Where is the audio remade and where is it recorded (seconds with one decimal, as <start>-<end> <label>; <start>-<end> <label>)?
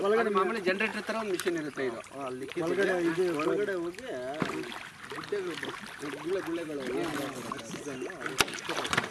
0.0-9.1 recorded